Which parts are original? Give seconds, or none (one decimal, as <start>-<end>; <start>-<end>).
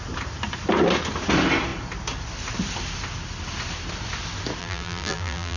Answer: 0.0-4.6